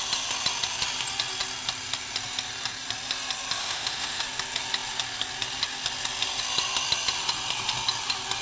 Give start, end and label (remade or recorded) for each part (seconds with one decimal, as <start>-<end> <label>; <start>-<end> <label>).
0.0-3.6 recorded; 3.6-4.2 remade; 4.2-8.4 recorded